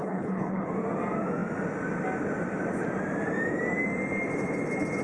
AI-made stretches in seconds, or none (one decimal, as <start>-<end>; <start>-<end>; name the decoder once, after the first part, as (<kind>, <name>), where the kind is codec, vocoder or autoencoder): 0.0-0.7 (codec, HILCodec)